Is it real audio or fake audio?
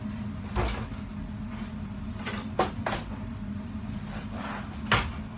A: real